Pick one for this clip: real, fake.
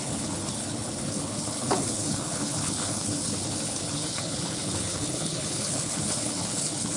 fake